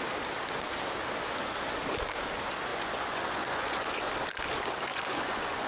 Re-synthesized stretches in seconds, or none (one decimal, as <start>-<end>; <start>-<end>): 2.7-4.1; 4.9-5.7